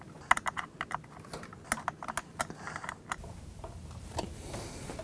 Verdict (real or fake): real